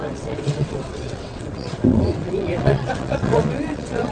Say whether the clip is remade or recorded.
remade